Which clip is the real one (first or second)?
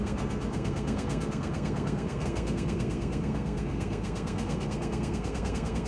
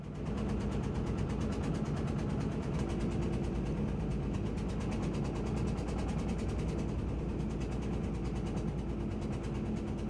second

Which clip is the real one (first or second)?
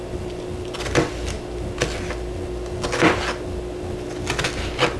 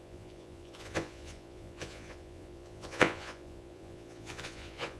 first